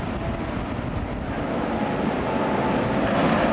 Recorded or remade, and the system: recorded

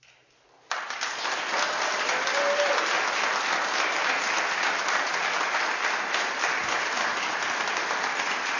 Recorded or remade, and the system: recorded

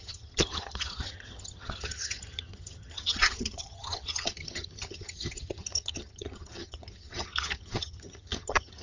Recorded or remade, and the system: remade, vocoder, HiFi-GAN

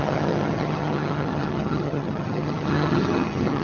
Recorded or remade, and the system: remade, vocoder, HiFi-GAN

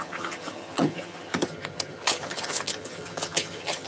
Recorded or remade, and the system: remade, vocoder, HiFi-GAN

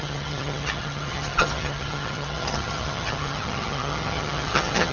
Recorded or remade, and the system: remade, vocoder, HiFi-GAN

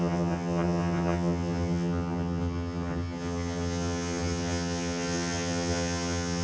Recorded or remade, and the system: remade, vocoder, HiFi-GAN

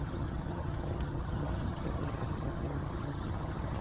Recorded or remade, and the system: remade, vocoder, HiFi-GAN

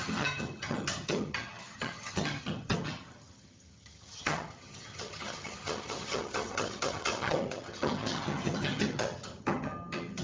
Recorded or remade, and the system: remade, vocoder, HiFi-GAN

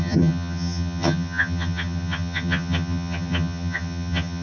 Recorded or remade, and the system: remade, vocoder, HiFi-GAN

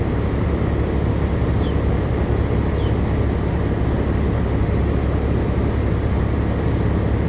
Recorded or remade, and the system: recorded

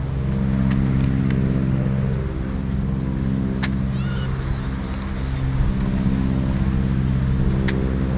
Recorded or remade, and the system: recorded